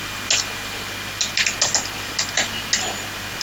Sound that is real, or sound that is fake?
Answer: real